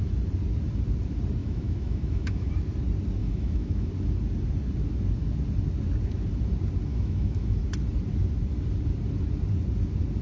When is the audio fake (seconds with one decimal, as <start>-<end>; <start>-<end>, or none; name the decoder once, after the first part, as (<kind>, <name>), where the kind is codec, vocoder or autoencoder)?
1.4-2.5 (autoencoder, DAC-VAE); 3.2-3.9; 6.9-7.6